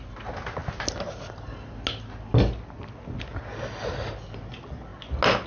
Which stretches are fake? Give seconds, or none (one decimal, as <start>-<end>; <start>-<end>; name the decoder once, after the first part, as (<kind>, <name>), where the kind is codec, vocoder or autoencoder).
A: none